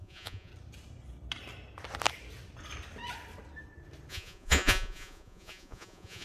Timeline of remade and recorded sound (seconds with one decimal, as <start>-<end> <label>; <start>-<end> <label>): 0.0-0.5 remade; 0.5-4.1 recorded; 4.1-6.2 remade